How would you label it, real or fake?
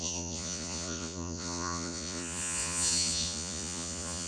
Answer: fake